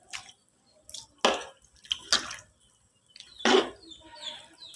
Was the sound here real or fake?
real